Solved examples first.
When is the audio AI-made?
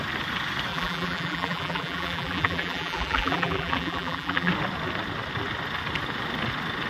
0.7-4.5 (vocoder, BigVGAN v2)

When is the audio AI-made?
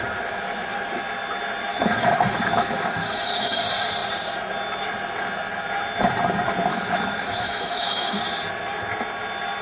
1.7-3.6 (autoencoder, DAC-VAE); 6.7-8.2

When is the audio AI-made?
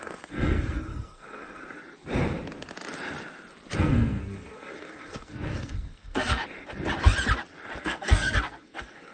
0.0-1.6 (codec, SNAC); 3.8-6.4; 7.8-9.1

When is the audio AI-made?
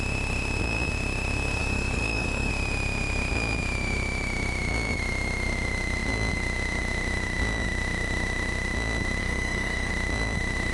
1.6-2.5 (codec, DAC); 9.2-9.9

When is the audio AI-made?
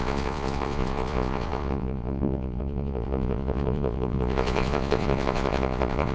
0.0-6.1 (vocoder, Vocos)